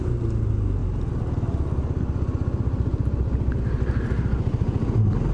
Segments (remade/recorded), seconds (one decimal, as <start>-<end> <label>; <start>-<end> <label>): 0.0-5.3 recorded